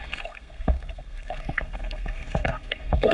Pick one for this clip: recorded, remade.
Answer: remade